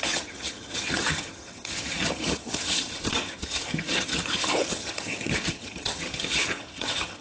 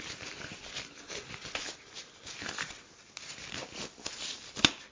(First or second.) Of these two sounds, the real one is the second